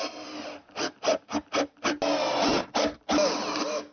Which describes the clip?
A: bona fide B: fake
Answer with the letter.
A